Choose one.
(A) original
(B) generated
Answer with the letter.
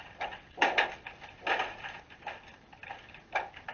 A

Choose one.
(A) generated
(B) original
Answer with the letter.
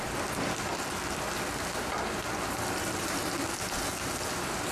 B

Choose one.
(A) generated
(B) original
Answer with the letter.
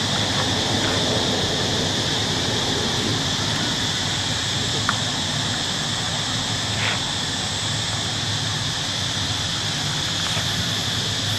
B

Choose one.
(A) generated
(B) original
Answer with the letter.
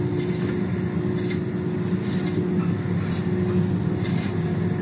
B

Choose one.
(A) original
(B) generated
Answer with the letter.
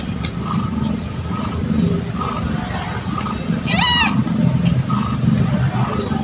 A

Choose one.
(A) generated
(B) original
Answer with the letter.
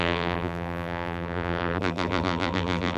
A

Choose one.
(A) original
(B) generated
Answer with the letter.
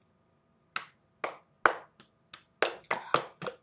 A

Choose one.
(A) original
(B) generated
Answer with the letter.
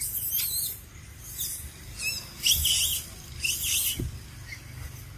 A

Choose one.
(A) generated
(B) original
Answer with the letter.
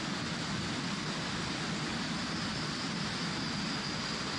B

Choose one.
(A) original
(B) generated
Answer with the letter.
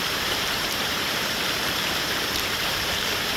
B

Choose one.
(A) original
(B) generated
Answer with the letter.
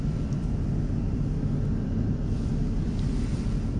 B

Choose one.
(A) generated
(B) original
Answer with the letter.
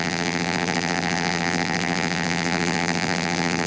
A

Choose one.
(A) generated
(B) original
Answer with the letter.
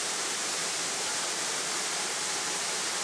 A